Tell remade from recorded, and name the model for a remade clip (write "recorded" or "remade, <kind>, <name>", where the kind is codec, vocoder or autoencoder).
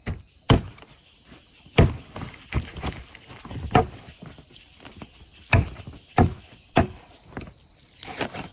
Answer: recorded